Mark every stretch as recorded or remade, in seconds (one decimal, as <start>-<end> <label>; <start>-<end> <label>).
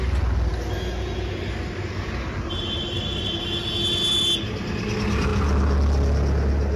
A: 0.0-6.8 recorded